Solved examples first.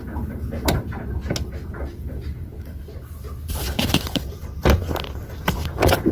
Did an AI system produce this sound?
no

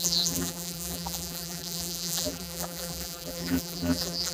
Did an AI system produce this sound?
yes